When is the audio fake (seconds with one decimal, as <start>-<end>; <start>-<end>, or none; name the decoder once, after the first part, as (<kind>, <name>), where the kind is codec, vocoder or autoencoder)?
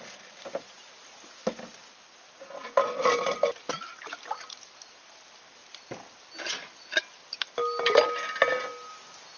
1.4-1.9 (vocoder, BigVGAN v2); 3.9-4.4; 5.6-7.0